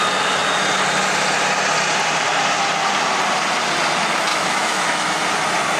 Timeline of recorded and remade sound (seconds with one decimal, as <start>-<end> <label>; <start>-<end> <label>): 0.0-4.3 recorded; 4.3-5.2 remade; 5.2-5.8 recorded